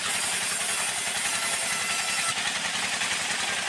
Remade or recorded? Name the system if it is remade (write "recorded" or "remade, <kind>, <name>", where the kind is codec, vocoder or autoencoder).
remade, vocoder, BigVGAN v2